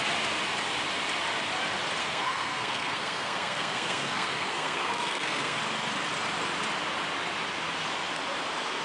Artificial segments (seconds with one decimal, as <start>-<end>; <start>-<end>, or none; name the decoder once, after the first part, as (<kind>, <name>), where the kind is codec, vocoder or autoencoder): 2.0-5.6 (codec, SNAC)